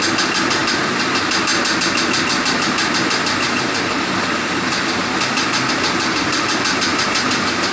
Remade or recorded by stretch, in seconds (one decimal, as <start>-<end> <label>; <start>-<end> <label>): 0.0-7.7 recorded